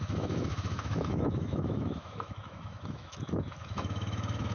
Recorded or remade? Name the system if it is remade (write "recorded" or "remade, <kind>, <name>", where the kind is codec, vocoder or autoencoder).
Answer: remade, autoencoder, DAC-VAE